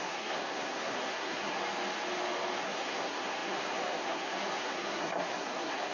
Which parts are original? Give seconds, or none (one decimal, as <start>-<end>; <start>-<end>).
1.6-2.6